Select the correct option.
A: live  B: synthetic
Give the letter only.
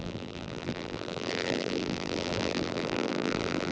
B